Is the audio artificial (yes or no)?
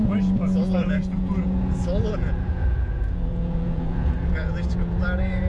yes